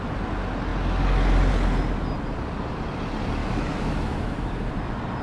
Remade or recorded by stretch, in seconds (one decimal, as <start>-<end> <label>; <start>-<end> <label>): 0.0-3.4 recorded; 3.4-4.7 remade; 4.7-5.2 recorded